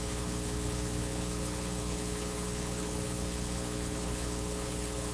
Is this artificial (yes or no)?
yes